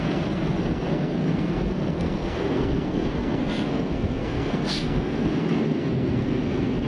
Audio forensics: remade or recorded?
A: remade